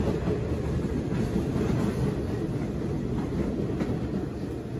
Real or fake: real